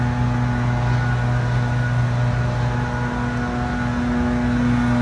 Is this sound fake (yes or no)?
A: no